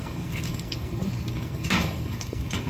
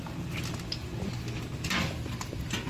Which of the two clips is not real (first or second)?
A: first